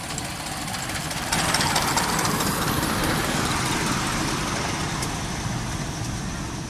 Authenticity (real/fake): real